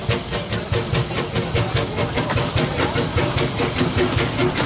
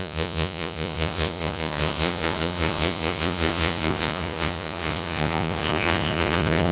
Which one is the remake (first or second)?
second